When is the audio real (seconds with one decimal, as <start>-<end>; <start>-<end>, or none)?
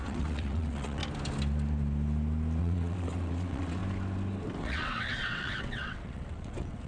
1.0-2.6; 3.8-4.6